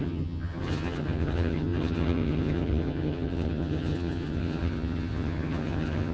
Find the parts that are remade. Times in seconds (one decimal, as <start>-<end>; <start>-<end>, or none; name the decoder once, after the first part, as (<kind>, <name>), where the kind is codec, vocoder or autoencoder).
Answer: 0.0-6.1 (vocoder, HiFi-GAN)